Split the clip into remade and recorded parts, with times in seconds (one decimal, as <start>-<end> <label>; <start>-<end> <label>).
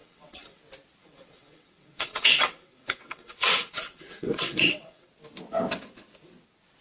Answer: 0.0-0.6 remade; 0.6-1.0 recorded; 1.0-5.1 remade; 5.1-6.8 recorded